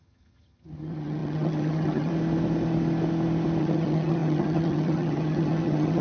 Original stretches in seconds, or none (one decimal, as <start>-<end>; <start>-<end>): 2.1-3.6